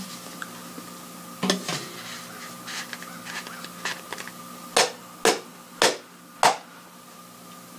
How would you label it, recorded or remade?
recorded